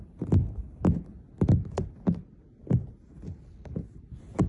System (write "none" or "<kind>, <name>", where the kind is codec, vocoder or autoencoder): none